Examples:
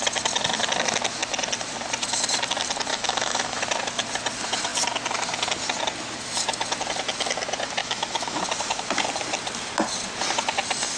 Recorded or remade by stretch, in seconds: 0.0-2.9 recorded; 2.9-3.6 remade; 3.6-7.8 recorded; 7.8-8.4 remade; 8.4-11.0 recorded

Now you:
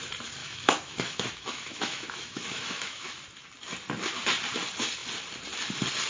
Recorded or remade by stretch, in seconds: 0.0-0.4 recorded; 0.4-3.2 remade; 3.2-6.1 recorded

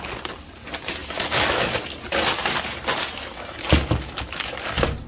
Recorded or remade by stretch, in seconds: 0.0-5.1 recorded

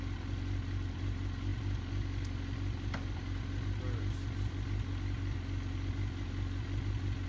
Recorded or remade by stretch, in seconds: 0.0-7.3 recorded

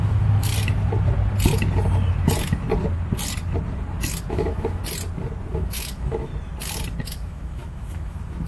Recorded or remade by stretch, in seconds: 0.0-0.5 remade; 0.5-4.3 recorded; 4.3-4.8 remade; 4.8-5.5 recorded; 5.5-6.3 remade; 6.3-7.0 recorded; 7.0-8.5 remade